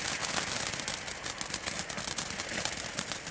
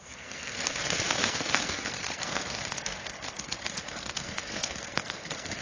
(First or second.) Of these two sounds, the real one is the first